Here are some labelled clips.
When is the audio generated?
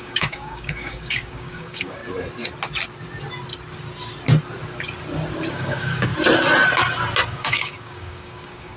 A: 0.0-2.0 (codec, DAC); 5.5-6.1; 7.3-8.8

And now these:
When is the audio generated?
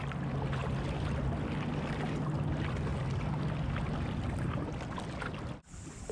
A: none